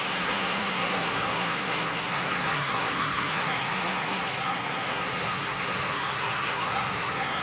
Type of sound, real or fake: fake